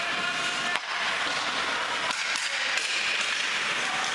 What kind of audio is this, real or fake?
real